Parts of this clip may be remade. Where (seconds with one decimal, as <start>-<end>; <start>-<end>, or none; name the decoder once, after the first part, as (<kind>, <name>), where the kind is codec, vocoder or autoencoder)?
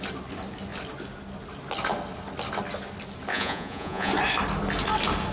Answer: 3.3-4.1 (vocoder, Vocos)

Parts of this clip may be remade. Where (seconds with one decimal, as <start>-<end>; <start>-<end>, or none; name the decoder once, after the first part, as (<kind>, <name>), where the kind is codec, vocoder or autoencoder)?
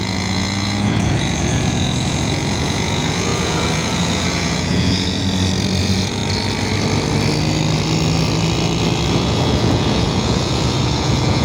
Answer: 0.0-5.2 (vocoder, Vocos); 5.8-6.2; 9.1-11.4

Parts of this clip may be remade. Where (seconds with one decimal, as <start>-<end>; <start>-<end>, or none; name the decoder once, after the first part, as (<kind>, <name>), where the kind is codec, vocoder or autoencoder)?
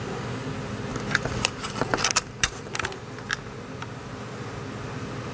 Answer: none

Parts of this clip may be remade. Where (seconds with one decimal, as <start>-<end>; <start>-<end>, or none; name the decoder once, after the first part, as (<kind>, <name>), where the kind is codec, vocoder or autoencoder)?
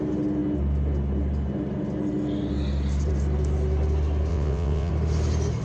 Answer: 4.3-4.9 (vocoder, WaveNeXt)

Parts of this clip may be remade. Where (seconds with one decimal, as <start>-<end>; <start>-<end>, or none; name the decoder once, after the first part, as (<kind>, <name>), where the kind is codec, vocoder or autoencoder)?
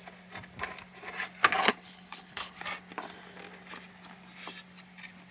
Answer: 1.6-2.6 (codec, HILCodec)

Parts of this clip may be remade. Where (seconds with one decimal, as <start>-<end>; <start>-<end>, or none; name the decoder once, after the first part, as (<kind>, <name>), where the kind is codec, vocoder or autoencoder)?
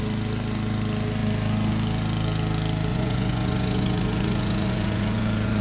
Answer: 2.9-5.6 (vocoder, Vocos)